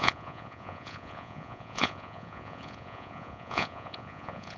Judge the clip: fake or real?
fake